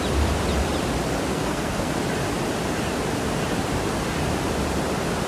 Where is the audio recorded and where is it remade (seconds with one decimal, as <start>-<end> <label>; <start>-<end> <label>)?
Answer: 0.0-1.3 recorded; 1.3-1.9 remade; 1.9-5.3 recorded